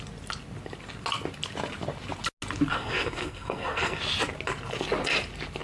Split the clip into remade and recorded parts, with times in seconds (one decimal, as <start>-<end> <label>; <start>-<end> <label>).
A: 0.0-2.7 recorded; 2.7-4.0 remade; 4.0-5.6 recorded